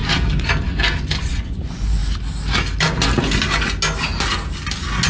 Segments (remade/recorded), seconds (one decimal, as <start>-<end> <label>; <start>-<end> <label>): 0.0-1.2 recorded; 1.2-2.0 remade; 2.0-5.1 recorded